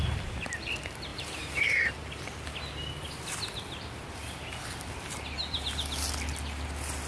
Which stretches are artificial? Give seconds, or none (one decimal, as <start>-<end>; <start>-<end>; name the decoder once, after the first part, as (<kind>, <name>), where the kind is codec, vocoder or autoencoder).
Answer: 1.1-1.8 (vocoder, BigVGAN v2)